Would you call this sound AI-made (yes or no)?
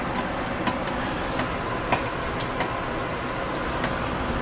no